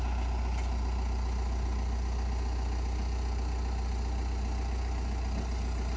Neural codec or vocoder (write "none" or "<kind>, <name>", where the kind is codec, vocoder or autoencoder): none